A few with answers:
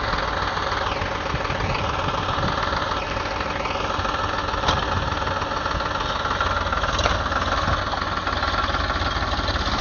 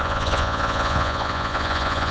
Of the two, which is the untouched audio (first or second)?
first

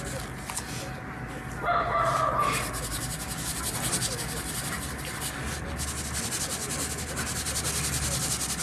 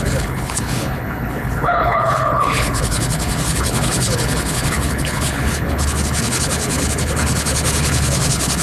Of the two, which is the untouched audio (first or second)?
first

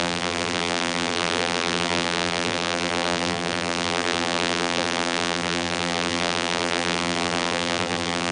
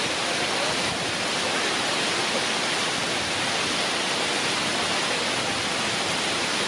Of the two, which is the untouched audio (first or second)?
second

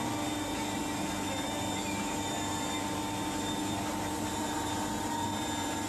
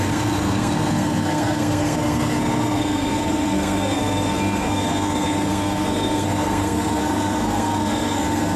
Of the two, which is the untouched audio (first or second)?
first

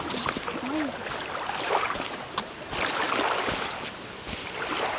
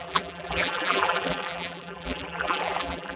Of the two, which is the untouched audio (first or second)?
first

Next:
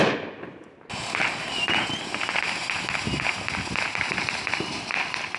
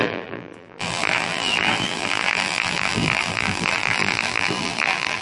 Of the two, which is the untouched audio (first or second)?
first